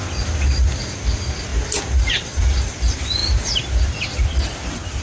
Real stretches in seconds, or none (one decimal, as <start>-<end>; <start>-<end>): 0.0-5.0